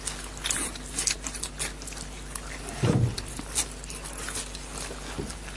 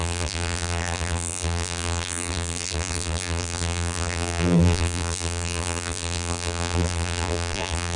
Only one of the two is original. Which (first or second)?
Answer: first